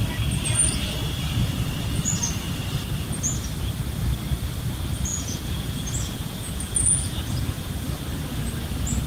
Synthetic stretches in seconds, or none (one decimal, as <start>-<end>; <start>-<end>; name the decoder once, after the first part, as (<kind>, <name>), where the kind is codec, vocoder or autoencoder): 5.1-7.7 (vocoder, Vocos)